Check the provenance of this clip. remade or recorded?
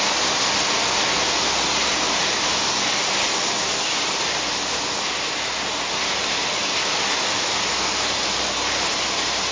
recorded